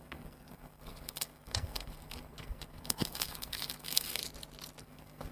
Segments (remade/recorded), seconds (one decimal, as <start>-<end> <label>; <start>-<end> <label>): 0.0-4.2 remade; 4.2-4.8 recorded; 4.8-5.3 remade